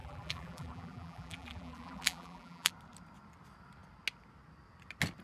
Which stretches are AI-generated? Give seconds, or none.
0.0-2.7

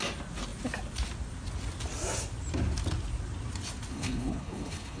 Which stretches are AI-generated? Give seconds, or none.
3.9-5.0

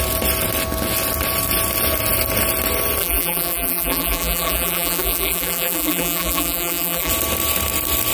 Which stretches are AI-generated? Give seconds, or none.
3.0-7.1

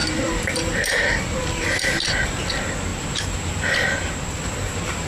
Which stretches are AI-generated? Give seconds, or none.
0.0-2.9; 4.1-5.1